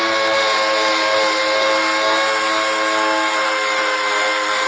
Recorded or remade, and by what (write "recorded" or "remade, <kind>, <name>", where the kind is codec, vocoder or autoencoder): recorded